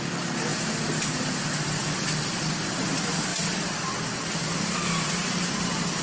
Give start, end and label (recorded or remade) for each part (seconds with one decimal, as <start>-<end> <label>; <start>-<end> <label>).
0.0-6.0 recorded